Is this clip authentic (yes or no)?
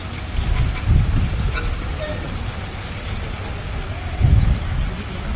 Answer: yes